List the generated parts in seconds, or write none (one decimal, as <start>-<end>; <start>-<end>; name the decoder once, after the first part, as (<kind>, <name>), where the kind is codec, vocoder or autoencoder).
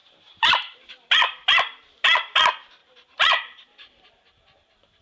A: 0.0-0.8 (vocoder, BigVGAN v2); 2.8-5.0